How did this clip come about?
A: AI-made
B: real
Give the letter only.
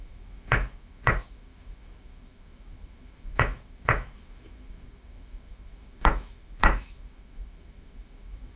A